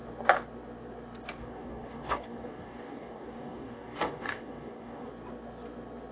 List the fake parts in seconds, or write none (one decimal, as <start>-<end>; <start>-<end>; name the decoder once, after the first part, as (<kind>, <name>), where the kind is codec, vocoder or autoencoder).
1.4-5.1 (codec, DAC)